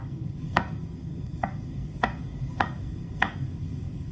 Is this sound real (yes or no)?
no